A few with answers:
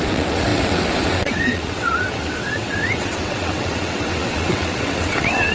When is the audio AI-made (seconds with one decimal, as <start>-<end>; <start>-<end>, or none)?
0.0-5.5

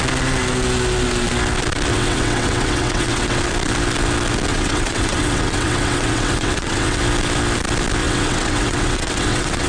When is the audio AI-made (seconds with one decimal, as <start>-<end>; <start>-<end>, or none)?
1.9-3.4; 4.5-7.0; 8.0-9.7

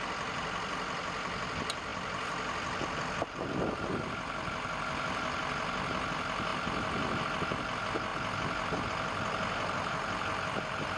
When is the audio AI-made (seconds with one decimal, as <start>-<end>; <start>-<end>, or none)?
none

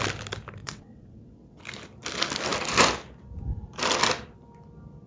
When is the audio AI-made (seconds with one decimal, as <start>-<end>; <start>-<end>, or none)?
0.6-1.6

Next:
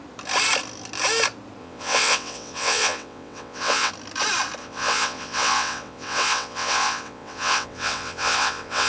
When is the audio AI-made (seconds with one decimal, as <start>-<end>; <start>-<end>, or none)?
1.6-3.9; 4.6-8.9

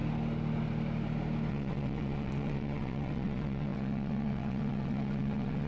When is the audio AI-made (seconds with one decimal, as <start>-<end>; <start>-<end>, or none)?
1.5-5.7